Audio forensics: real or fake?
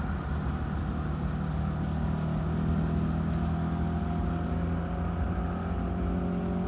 real